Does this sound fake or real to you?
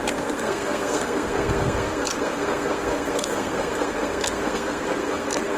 fake